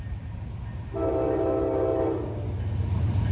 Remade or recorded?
recorded